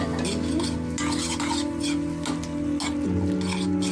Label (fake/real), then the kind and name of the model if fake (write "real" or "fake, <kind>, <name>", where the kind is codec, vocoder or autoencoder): real